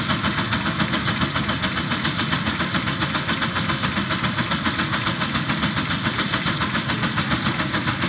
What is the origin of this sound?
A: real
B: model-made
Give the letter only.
A